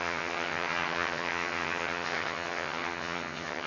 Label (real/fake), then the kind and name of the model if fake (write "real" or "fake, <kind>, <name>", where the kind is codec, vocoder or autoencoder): fake, vocoder, HiFi-GAN